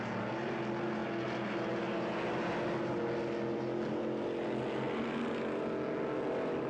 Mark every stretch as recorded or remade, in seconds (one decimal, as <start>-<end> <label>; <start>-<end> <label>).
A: 0.0-6.7 recorded